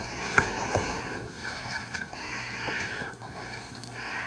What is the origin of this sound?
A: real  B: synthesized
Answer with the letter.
B